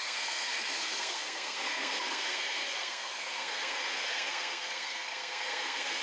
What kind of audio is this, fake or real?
fake